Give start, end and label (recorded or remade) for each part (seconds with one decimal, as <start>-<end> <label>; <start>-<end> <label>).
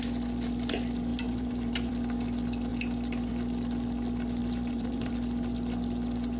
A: 0.0-1.1 recorded; 1.1-1.9 remade; 1.9-4.4 recorded; 4.4-5.1 remade; 5.1-6.4 recorded